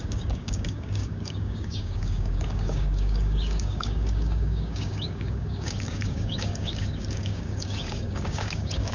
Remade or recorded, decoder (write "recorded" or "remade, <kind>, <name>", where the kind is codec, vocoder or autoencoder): remade, codec, DAC